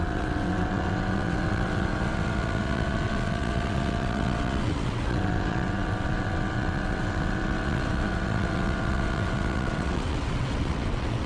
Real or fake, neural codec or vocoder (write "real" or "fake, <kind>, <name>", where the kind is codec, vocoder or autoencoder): fake, vocoder, WaveNeXt